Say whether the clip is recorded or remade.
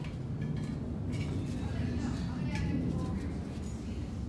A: recorded